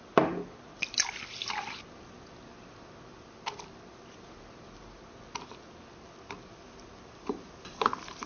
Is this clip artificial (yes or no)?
no